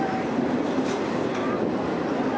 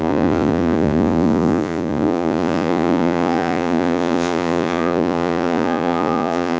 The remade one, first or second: second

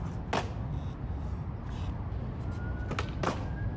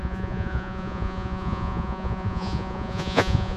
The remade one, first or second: second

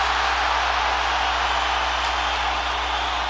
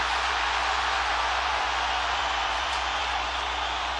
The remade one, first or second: second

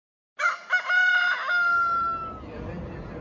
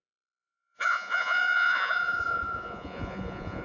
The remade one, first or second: second